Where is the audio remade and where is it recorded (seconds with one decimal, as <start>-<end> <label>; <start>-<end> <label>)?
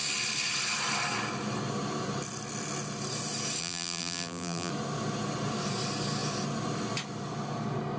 0.0-3.6 recorded; 3.6-4.7 remade; 4.7-8.0 recorded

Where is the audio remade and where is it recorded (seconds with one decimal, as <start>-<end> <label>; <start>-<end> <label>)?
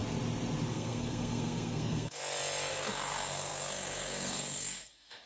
0.0-0.7 recorded; 0.7-2.2 remade; 2.2-2.7 recorded; 2.7-5.3 remade